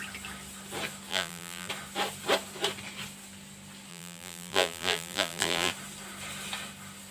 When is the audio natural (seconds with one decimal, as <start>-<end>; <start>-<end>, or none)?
0.0-1.1; 1.7-3.9; 5.7-7.1